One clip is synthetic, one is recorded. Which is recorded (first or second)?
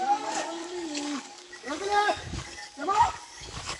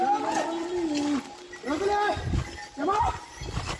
second